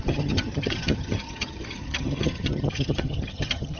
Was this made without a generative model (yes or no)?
no